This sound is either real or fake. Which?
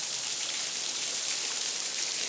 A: fake